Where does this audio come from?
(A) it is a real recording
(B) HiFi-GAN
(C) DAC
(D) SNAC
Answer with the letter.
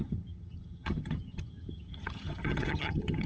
B